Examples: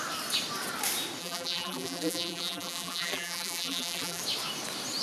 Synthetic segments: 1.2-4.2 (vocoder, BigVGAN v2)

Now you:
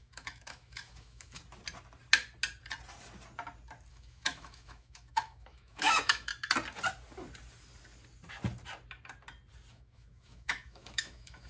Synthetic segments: 0.0-1.4 (autoencoder, DAC-VAE); 3.9-6.3; 9.7-11.5

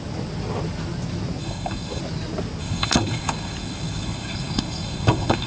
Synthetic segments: 1.4-2.0 (codec, DAC); 2.6-5.5

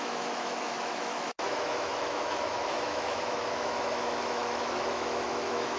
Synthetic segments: 0.0-5.8 (autoencoder, DAC-VAE)

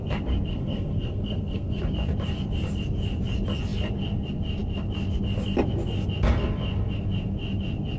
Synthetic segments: 0.5-1.8 (codec, SNAC)